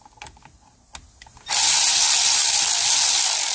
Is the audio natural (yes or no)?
yes